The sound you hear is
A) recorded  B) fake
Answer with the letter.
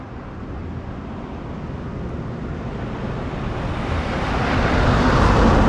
A